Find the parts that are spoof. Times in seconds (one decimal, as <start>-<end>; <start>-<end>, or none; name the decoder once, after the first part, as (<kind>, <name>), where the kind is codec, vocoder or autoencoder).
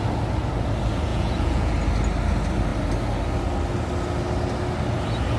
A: 1.1-1.7 (vocoder, Vocos)